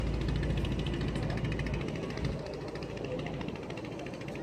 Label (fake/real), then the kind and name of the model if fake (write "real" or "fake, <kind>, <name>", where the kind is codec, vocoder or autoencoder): real